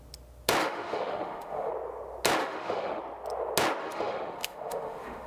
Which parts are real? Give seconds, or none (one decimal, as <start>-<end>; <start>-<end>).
0.0-0.6; 1.7-2.4; 3.0-3.8